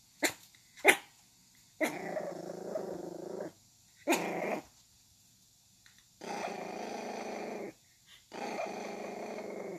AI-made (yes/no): no